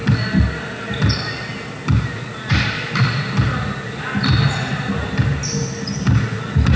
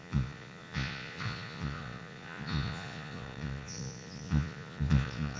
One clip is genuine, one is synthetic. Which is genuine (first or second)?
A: first